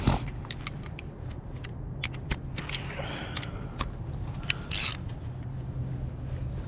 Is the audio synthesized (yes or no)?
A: no